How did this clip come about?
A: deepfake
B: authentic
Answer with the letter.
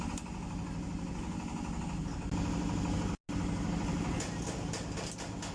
B